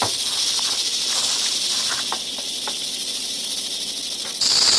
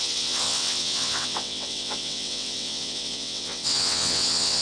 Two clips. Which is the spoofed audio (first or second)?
second